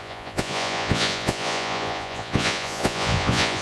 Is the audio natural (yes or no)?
no